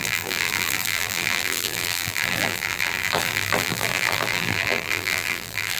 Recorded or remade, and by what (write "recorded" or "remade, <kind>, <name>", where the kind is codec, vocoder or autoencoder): remade, vocoder, BigVGAN v2